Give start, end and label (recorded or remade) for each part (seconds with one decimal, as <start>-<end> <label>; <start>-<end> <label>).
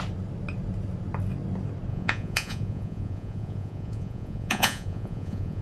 0.0-1.9 recorded; 1.9-5.6 remade